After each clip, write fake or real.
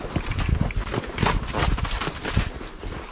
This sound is real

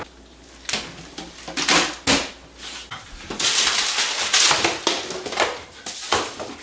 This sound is real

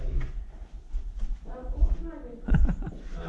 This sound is real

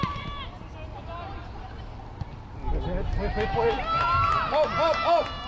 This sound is real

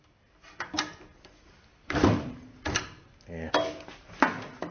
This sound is real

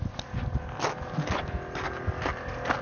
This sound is real